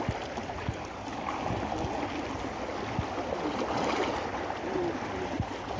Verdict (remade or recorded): recorded